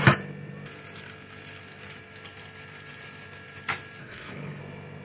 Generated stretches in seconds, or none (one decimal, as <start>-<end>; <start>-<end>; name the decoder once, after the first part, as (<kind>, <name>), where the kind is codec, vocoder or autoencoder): 4.0-4.6 (codec, HILCodec)